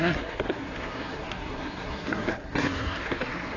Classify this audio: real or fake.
fake